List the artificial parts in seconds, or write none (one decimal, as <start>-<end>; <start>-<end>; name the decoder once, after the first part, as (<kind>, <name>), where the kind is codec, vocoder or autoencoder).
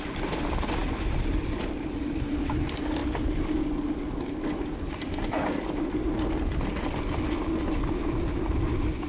0.0-0.8 (vocoder, BigVGAN v2); 1.4-3.0; 7.9-9.1